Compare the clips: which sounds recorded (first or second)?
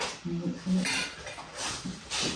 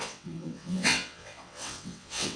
first